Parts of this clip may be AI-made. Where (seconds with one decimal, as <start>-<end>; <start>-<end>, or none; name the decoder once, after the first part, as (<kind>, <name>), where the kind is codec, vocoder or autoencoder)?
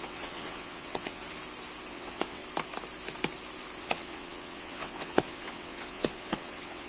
0.0-1.2 (vocoder, WaveNeXt); 1.9-2.4; 3.8-6.9